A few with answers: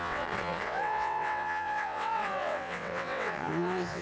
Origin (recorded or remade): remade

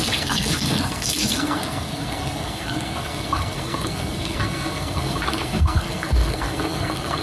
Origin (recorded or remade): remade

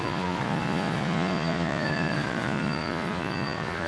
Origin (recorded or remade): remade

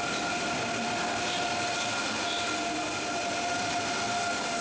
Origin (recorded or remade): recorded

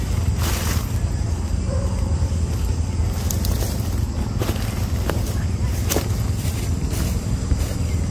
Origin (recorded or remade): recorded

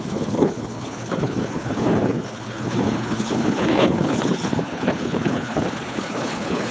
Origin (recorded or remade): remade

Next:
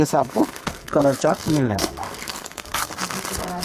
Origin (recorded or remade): remade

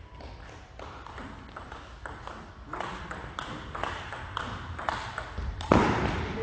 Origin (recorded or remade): recorded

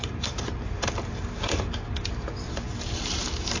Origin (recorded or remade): remade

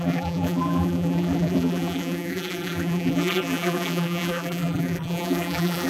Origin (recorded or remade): remade